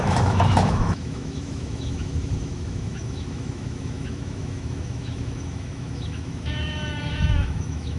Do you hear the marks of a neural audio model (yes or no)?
yes